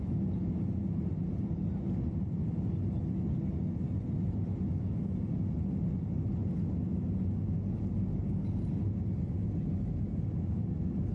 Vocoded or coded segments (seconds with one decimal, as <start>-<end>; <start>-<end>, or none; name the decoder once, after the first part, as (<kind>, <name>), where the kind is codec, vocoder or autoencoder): 1.2-2.7 (vocoder, BigVGAN v2)